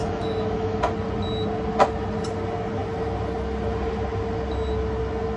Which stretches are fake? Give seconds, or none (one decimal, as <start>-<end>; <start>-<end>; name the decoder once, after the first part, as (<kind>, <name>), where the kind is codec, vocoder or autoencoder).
0.0-0.8 (autoencoder, DAC-VAE)